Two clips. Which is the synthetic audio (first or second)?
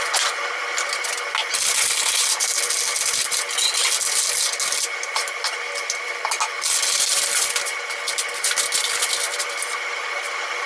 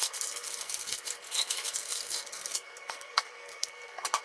second